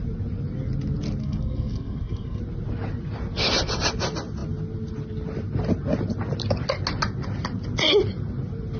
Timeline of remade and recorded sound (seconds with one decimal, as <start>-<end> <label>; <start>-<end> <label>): 0.0-1.2 recorded; 1.2-2.4 remade; 2.4-8.8 recorded